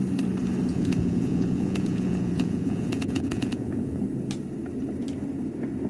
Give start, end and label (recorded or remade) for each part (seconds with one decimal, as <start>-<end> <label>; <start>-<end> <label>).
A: 0.0-0.7 recorded; 0.7-4.0 remade; 4.0-5.9 recorded